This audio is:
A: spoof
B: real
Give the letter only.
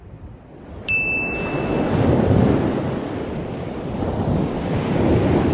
B